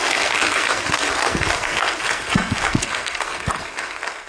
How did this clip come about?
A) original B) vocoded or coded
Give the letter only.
B